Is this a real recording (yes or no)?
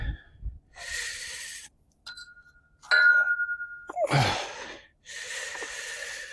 yes